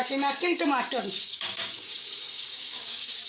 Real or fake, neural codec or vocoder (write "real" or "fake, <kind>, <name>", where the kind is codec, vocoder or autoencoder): fake, codec, DAC